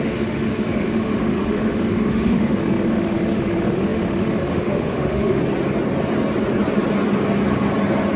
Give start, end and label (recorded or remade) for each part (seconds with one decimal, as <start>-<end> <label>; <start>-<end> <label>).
0.0-5.4 remade; 5.4-8.2 recorded